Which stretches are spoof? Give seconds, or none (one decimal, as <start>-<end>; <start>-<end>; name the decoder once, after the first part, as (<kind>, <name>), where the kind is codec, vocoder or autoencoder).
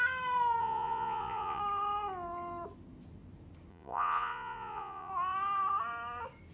0.6-1.6 (vocoder, Vocos); 3.7-5.1